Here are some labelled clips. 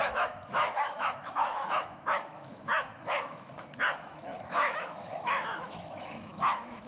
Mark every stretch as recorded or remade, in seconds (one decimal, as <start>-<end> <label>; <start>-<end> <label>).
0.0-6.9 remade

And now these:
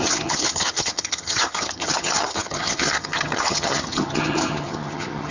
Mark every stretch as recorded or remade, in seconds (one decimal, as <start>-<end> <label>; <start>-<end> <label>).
0.0-5.3 remade

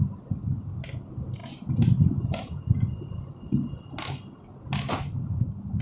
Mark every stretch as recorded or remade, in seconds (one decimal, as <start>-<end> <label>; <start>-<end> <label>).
0.0-5.8 recorded